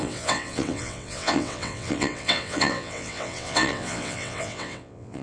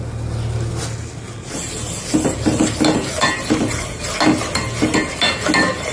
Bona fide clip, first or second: second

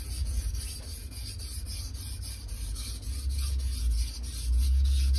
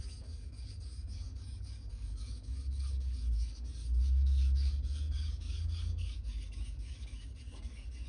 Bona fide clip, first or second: first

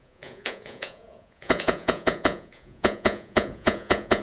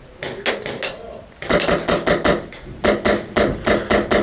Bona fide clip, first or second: second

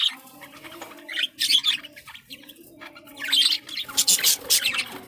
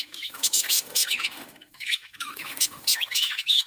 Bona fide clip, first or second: first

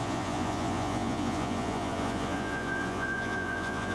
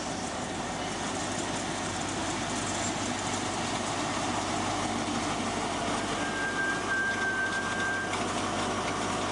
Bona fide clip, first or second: second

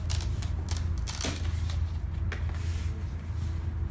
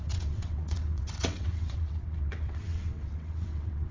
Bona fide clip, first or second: first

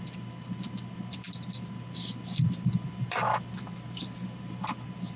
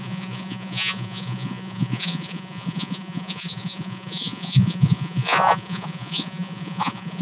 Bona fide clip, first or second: first